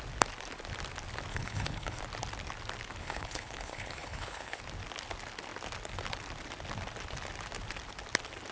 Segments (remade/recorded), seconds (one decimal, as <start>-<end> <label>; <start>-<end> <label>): 0.0-1.3 recorded; 1.3-2.0 remade; 2.0-3.0 recorded; 3.0-4.6 remade; 4.6-8.5 recorded

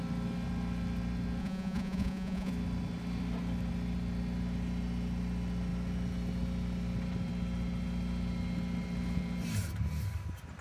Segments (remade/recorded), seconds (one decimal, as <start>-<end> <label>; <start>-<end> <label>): 0.0-1.4 recorded; 1.4-2.5 remade; 2.5-10.6 recorded

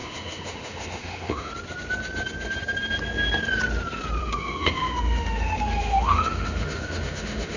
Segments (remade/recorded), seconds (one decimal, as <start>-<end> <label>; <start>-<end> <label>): 0.0-1.5 remade; 1.5-4.2 recorded; 4.2-7.6 remade

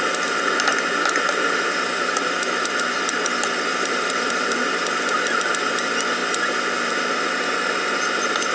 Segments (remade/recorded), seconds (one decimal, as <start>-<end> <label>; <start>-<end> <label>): 0.0-3.7 recorded; 3.7-5.5 remade; 5.5-8.5 recorded

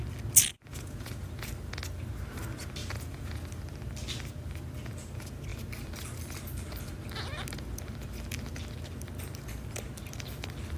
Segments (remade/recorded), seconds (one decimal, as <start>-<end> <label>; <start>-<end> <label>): 0.0-0.7 recorded; 0.7-1.4 remade; 1.4-2.8 recorded; 2.8-3.4 remade; 3.4-10.8 recorded

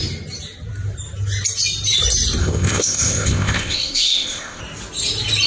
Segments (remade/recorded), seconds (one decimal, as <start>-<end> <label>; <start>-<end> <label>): 0.0-2.4 recorded; 2.4-4.6 remade; 4.6-5.5 recorded

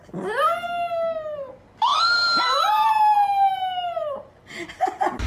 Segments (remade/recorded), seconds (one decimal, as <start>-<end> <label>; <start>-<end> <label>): 0.0-1.9 recorded; 1.9-2.7 remade; 2.7-4.0 recorded; 4.0-4.5 remade; 4.5-5.3 recorded

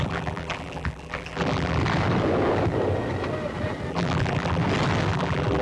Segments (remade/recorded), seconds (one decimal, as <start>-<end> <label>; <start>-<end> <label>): 0.0-1.8 remade; 1.8-3.9 recorded; 3.9-4.6 remade; 4.6-5.1 recorded; 5.1-5.6 remade